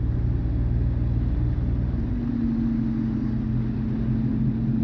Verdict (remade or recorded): recorded